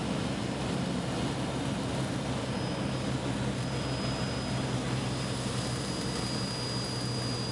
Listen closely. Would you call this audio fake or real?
real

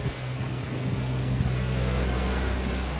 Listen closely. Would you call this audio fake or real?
fake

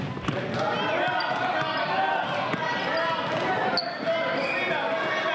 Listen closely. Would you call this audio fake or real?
real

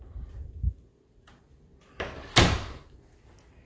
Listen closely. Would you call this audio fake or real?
real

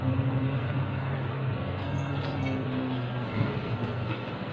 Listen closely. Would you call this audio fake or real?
fake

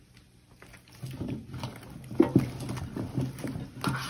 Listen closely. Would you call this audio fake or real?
real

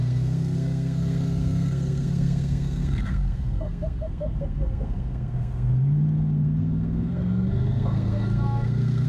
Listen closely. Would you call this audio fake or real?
fake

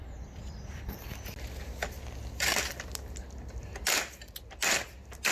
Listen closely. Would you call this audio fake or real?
real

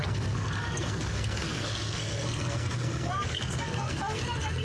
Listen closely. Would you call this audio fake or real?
fake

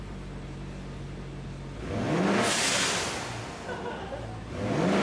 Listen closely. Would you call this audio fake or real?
real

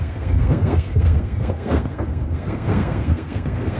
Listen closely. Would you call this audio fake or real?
fake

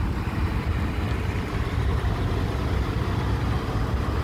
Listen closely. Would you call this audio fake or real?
real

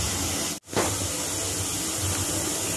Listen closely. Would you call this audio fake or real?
real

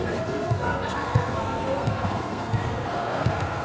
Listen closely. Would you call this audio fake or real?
fake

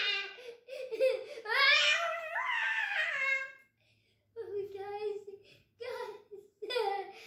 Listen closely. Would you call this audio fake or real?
real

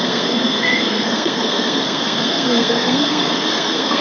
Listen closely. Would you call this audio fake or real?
fake